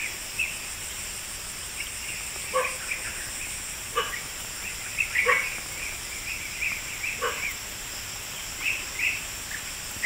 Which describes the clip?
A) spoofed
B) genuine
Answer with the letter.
B